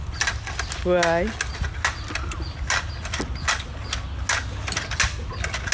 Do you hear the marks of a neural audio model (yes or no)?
no